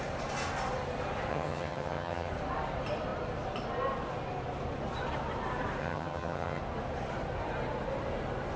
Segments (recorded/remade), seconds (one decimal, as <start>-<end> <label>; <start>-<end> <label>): 0.0-1.3 recorded; 1.3-2.3 remade; 2.3-5.8 recorded; 5.8-6.6 remade; 6.6-8.6 recorded